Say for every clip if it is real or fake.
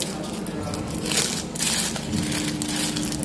real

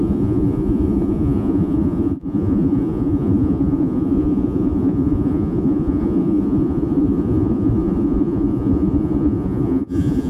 fake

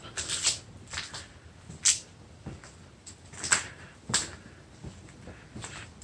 real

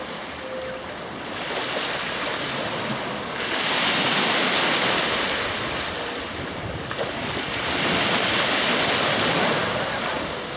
real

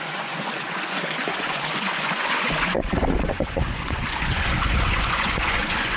fake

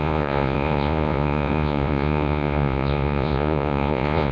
fake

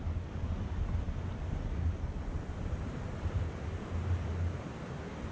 real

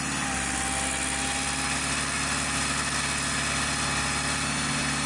real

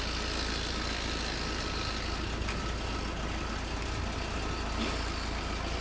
real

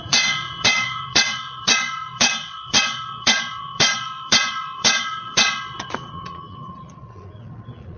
fake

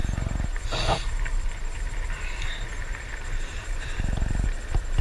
real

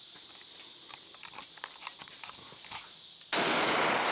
real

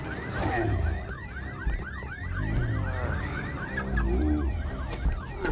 real